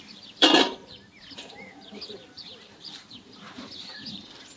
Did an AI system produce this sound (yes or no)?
yes